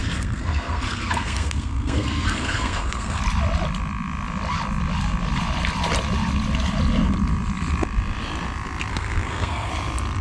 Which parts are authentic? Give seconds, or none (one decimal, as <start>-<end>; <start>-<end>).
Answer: 3.2-8.9; 9.7-10.2